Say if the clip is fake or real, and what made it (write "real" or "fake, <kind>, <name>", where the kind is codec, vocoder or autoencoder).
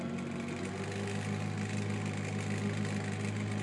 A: real